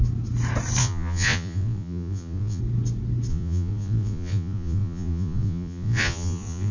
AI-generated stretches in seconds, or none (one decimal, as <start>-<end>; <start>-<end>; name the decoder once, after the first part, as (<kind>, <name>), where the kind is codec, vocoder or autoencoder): 0.8-2.6 (vocoder, Vocos); 3.3-6.7